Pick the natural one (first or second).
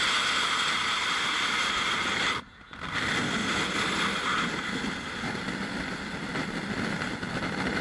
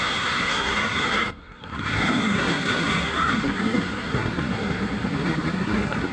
first